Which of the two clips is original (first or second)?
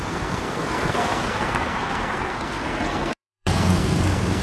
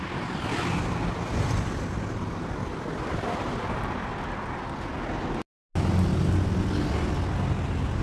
second